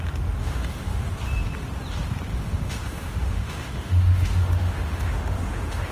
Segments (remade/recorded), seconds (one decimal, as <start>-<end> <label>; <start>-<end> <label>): 0.0-0.4 recorded; 0.4-1.1 remade; 1.1-2.3 recorded; 2.3-5.9 remade